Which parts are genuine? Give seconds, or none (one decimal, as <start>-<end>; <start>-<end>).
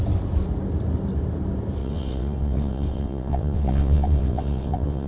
0.0-1.8